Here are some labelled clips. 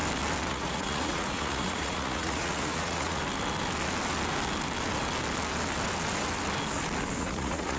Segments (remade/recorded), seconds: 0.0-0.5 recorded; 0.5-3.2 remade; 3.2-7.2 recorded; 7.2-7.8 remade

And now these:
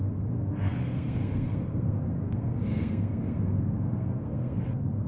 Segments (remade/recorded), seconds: 0.0-5.1 remade